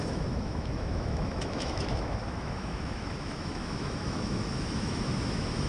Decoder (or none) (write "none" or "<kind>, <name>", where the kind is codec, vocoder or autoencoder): autoencoder, DAC-VAE